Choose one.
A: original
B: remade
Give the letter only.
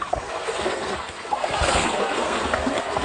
B